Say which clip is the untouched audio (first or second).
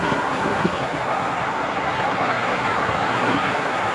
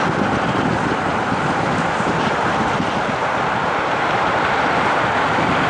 second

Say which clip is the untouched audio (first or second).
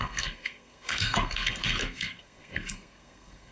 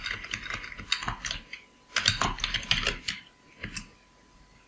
second